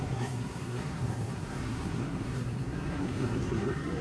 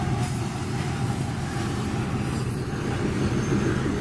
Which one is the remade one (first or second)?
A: first